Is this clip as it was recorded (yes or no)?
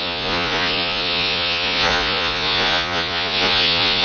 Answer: no